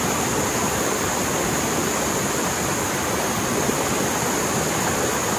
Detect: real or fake real